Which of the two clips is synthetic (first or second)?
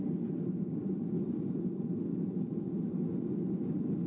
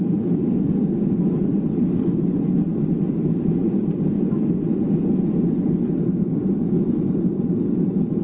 second